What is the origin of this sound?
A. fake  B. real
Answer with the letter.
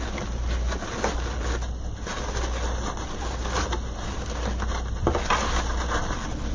B